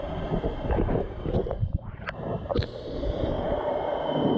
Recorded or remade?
remade